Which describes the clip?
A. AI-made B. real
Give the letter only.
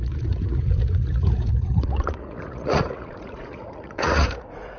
A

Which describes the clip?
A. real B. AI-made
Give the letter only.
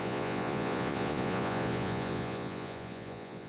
B